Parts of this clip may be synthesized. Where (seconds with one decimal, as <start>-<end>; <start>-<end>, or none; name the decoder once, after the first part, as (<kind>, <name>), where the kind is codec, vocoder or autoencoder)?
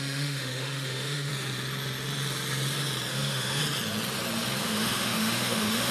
0.0-1.3 (autoencoder, DAC-VAE); 3.1-3.6; 4.6-5.9